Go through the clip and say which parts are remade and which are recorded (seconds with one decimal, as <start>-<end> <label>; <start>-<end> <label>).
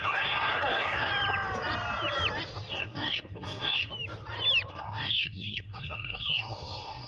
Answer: 0.0-1.1 remade; 1.1-2.7 recorded; 2.7-3.9 remade; 3.9-4.7 recorded; 4.7-7.1 remade